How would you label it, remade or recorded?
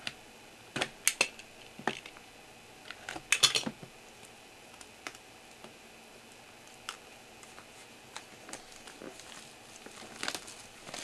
recorded